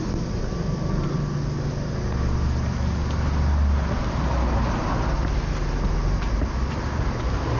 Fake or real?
real